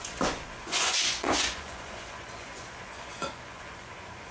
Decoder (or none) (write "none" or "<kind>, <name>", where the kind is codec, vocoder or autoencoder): vocoder, Vocos